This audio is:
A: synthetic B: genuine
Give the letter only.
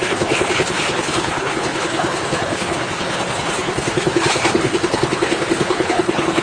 A